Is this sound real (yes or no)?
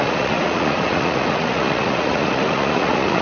no